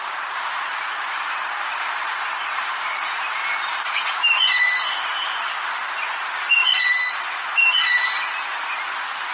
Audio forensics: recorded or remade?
remade